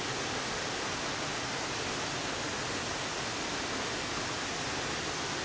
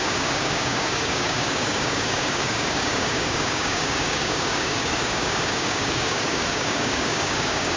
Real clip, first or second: first